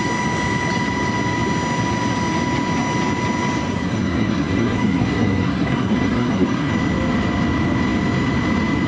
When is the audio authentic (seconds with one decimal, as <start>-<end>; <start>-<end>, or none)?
0.0-3.7; 6.7-8.9